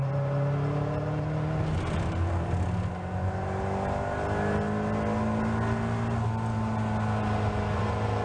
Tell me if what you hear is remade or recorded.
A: recorded